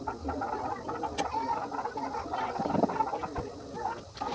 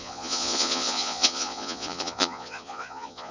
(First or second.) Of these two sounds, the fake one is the second